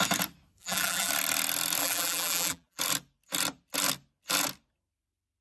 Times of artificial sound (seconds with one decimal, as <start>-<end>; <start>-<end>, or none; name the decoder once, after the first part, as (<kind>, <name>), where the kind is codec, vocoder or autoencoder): 0.6-1.1 (vocoder, BigVGAN v2); 1.8-2.8